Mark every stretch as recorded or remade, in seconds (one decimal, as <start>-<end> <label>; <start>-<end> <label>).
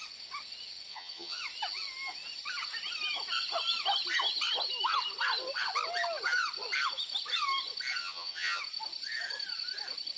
0.0-0.9 recorded; 0.9-1.4 remade; 1.4-8.0 recorded; 8.0-8.6 remade; 8.6-10.2 recorded